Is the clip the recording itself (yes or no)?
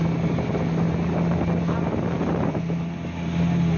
yes